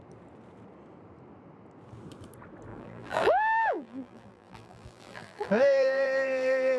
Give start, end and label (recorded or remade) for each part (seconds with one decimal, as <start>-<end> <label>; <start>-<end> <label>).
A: 0.0-2.7 recorded; 2.7-6.8 remade